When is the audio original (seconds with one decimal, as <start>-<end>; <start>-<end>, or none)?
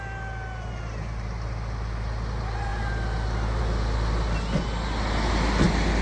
0.0-6.0